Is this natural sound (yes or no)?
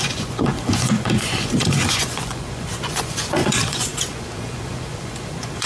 no